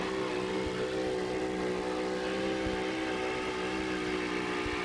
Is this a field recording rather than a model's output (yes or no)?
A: yes